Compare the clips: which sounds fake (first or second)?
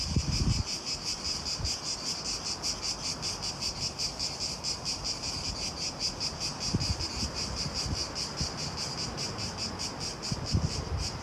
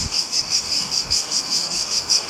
second